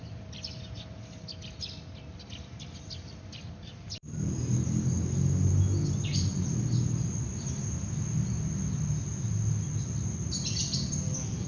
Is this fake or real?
real